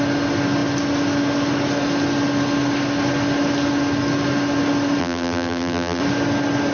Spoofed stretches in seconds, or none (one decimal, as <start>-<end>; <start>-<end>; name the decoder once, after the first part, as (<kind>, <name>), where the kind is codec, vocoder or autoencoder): 5.0-6.0 (vocoder, BigVGAN v2)